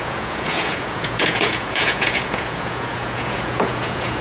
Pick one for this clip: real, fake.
fake